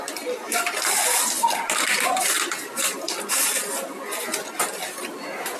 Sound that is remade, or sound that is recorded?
recorded